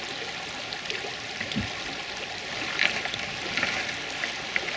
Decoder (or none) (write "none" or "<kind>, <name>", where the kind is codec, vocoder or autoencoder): none